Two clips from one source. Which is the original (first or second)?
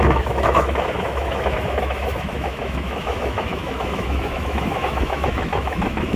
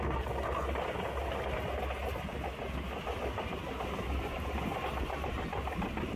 second